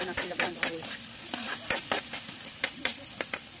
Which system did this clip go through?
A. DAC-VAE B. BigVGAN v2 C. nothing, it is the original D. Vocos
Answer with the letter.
B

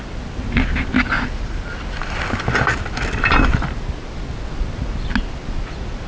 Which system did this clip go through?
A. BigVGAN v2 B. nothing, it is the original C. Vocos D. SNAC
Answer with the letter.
B